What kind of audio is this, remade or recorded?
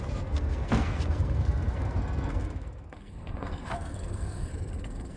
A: remade